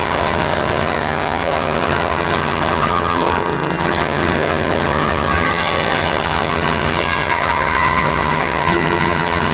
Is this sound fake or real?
fake